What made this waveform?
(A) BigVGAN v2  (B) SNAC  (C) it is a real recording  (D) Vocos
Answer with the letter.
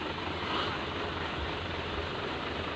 A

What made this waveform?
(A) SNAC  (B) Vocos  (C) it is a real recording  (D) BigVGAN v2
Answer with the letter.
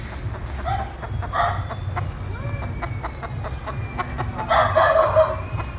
C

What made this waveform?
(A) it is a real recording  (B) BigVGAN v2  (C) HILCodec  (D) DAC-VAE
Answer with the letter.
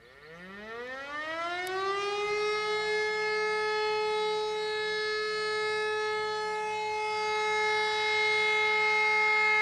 A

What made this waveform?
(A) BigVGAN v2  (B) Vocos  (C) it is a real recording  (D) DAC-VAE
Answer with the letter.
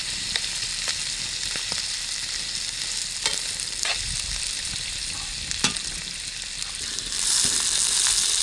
C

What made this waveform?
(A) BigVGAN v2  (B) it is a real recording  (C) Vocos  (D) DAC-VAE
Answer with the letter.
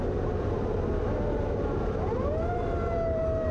A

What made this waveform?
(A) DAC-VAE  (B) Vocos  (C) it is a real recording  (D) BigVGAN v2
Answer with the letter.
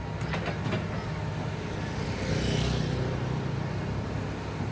C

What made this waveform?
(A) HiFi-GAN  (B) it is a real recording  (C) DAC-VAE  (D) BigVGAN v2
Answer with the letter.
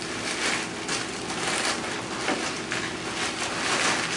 B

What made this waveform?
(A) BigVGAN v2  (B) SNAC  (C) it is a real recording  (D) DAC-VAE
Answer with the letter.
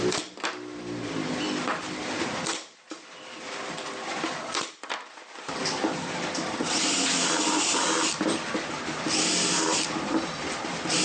A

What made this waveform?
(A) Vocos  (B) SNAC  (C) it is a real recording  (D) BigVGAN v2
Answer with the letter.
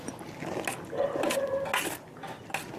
C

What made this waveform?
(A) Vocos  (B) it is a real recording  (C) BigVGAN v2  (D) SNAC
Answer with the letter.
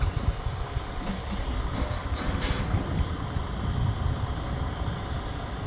B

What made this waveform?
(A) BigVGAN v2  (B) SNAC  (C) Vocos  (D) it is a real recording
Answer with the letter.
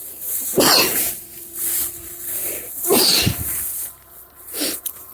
A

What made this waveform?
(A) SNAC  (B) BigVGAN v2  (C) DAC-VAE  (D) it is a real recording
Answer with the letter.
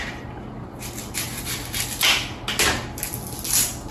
D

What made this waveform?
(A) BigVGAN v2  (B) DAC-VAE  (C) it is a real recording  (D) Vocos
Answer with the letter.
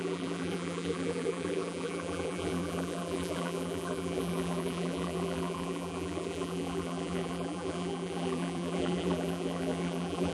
A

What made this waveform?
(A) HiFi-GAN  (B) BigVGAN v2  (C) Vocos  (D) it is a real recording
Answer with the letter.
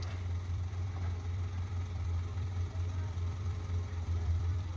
B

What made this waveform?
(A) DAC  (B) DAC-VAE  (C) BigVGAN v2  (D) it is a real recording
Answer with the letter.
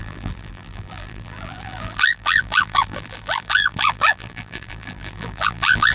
C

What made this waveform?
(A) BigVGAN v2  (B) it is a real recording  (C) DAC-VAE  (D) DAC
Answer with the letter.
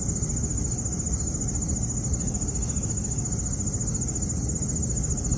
B